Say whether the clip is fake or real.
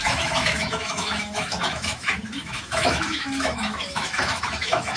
fake